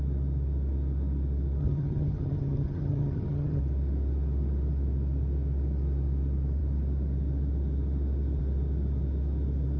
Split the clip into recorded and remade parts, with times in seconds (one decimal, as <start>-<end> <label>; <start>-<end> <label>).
0.0-1.6 recorded; 1.6-3.6 remade; 3.6-9.8 recorded

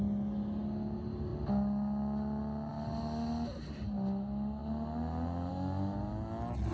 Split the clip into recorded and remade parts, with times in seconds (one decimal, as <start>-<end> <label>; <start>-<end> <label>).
0.0-6.7 recorded

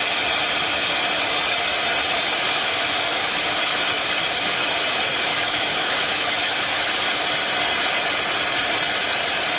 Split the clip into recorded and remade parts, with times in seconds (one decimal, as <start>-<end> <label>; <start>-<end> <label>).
0.0-3.2 recorded; 3.2-4.7 remade; 4.7-5.3 recorded; 5.3-6.9 remade; 6.9-9.6 recorded

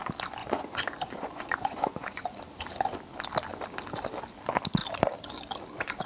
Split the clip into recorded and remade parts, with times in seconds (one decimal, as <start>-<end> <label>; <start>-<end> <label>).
0.0-0.4 recorded; 0.4-2.4 remade; 2.4-6.1 recorded

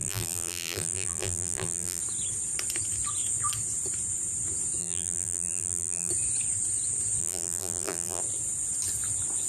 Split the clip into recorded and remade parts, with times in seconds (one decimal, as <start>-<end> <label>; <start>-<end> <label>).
0.0-2.0 remade; 2.0-4.8 recorded; 4.8-6.1 remade; 6.1-7.2 recorded; 7.2-8.2 remade; 8.2-9.5 recorded

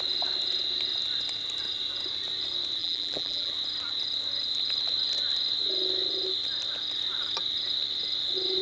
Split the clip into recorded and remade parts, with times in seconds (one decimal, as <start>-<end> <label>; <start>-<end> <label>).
0.0-2.8 recorded; 2.8-3.5 remade; 3.5-8.6 recorded